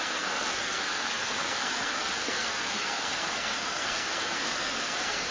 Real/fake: fake